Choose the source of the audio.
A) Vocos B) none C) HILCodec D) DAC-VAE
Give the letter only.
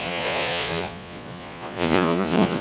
A